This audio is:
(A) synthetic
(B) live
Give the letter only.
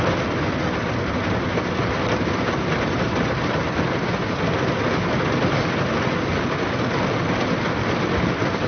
B